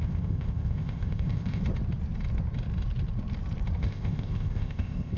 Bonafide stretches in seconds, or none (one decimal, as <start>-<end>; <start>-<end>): 1.6-3.8